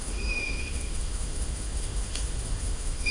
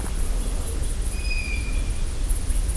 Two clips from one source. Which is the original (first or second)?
second